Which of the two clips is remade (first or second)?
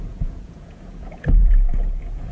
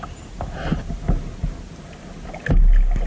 first